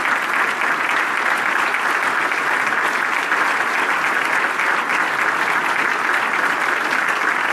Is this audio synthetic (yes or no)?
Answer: no